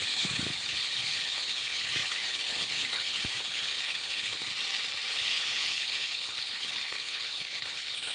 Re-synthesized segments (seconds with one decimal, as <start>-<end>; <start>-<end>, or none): 0.0-4.5; 5.1-8.1